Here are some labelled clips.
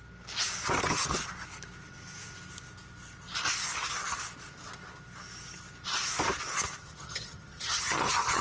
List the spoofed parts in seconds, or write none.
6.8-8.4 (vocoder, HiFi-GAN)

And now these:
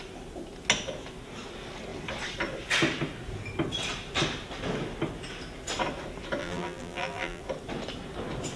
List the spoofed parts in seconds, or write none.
6.4-7.4 (vocoder, BigVGAN v2)

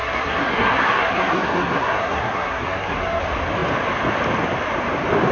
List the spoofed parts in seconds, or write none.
0.0-3.2 (codec, SNAC)

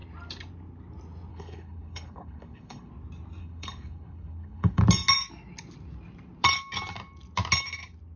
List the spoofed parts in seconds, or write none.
1.3-2.9 (codec, HILCodec); 3.4-4.8

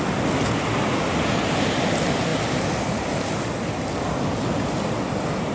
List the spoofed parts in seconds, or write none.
none

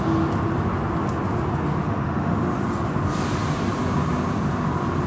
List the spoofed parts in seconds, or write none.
1.8-2.6 (autoencoder, DAC-VAE)

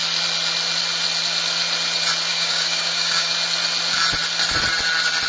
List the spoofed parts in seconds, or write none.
2.3-3.3 (codec, DAC)

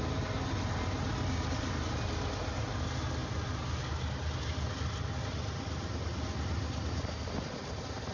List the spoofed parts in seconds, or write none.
none